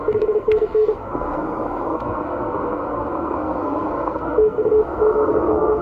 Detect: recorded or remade remade